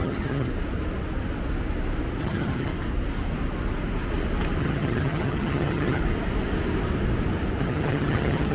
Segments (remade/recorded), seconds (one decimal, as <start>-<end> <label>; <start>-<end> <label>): 0.0-0.5 remade; 0.5-2.2 recorded; 2.2-2.7 remade; 2.7-4.6 recorded; 4.6-6.0 remade; 6.0-7.6 recorded; 7.6-8.5 remade